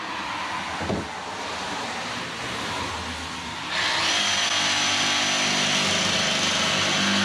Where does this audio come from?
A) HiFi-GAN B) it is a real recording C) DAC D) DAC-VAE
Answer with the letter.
B